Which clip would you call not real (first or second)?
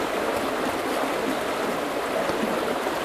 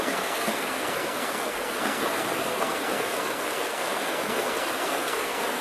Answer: second